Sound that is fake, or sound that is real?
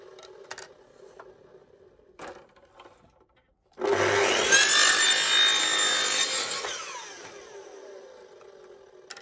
real